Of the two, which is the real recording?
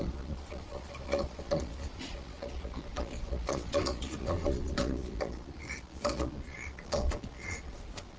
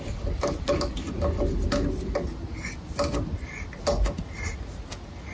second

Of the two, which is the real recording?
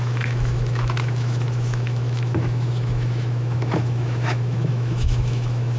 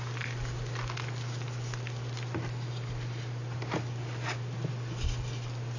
second